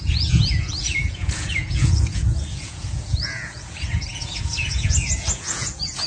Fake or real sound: fake